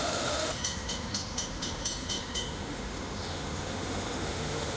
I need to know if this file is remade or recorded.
remade